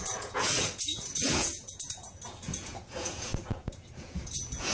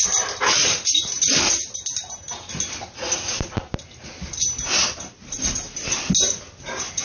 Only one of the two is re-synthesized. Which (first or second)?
first